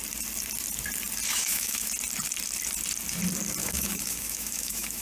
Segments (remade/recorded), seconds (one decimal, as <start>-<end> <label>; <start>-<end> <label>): 0.0-1.3 recorded; 1.3-1.9 remade; 1.9-3.6 recorded; 3.6-5.0 remade